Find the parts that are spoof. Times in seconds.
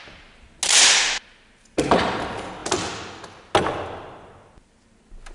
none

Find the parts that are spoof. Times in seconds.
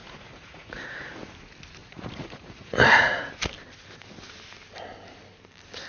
0.0-1.3 (vocoder, Vocos); 1.8-3.3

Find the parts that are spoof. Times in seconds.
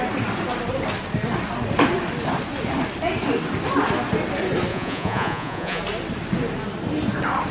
4.7-5.8 (vocoder, Vocos)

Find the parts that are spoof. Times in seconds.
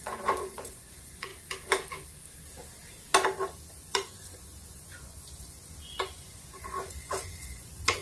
0.0-1.3 (vocoder, Vocos); 3.7-8.0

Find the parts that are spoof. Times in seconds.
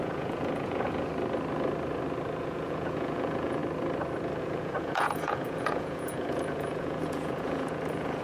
0.0-1.1 (vocoder, Vocos); 2.4-3.6; 4.4-8.2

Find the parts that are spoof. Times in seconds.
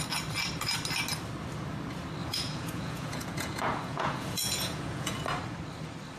2.2-5.2 (vocoder, Vocos)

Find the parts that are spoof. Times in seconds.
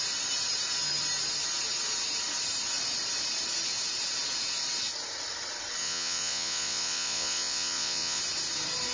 5.8-8.2 (vocoder, Vocos)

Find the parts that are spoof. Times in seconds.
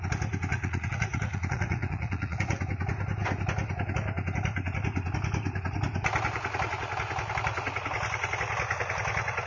0.5-2.6 (vocoder, Vocos)